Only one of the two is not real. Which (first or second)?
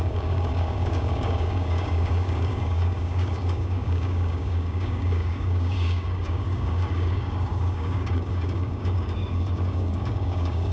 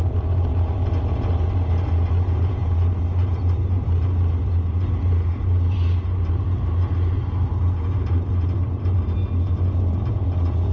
first